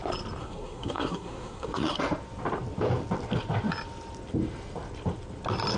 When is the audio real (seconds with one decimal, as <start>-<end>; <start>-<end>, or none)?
0.0-0.4; 2.0-5.8